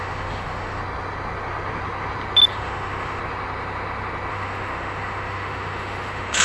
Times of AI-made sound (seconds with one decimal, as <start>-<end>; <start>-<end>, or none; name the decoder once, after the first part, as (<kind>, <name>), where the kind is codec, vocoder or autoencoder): 0.0-0.8 (autoencoder, DAC-VAE); 2.5-3.2; 4.3-6.4